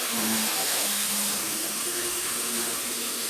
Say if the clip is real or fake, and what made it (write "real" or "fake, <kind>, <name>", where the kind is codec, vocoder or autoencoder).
fake, autoencoder, DAC-VAE